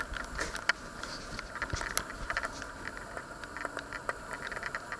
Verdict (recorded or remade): recorded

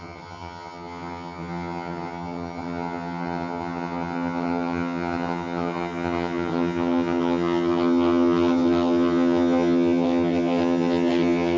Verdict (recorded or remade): remade